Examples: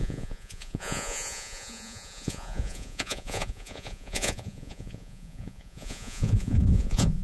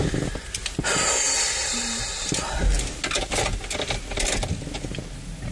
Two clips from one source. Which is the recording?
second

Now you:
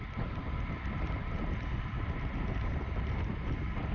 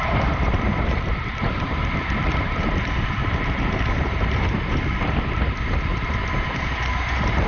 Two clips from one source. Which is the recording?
first